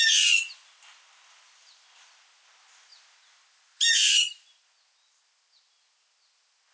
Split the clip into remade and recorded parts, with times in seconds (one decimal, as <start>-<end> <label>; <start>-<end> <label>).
0.0-6.7 recorded